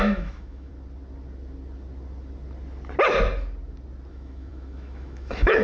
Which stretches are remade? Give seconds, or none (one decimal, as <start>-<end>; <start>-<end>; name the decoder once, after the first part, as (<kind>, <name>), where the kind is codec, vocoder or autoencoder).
0.0-0.7 (autoencoder, DAC-VAE); 4.1-5.6